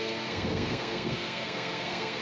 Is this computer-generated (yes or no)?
yes